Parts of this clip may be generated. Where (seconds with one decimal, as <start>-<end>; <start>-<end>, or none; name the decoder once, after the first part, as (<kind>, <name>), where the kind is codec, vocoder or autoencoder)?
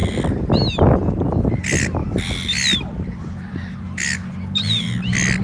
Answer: none